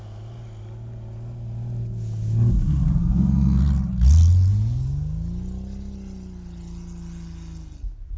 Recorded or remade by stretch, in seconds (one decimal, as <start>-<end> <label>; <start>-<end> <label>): 0.0-3.0 recorded; 3.0-3.6 remade; 3.6-8.2 recorded